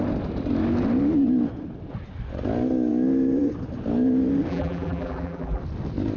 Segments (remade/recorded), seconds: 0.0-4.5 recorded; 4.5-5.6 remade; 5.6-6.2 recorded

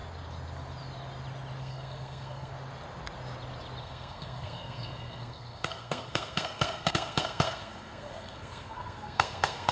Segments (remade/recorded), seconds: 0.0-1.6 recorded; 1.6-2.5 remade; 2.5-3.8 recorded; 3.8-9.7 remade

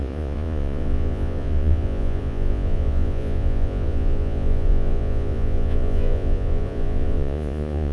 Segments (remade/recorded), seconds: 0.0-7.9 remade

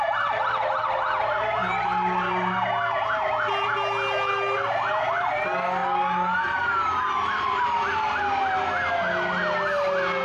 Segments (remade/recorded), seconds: 0.0-10.2 recorded

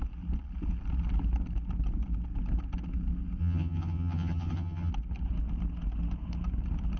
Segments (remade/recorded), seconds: 0.0-3.4 recorded; 3.4-4.9 remade; 4.9-7.0 recorded